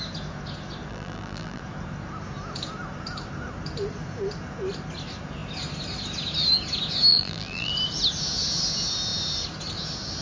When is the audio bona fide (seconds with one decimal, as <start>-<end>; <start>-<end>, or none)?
0.0-0.9; 1.6-7.1; 7.7-10.2